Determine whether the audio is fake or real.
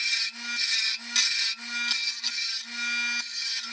real